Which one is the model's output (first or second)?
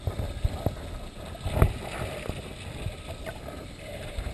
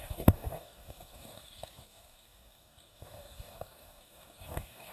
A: second